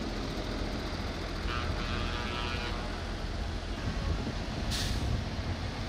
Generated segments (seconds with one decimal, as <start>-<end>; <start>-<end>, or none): none